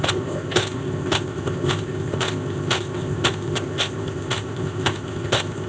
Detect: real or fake fake